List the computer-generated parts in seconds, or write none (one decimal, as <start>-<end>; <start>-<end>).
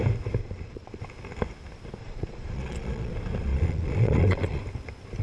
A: 0.4-1.0; 2.0-3.1; 3.5-4.6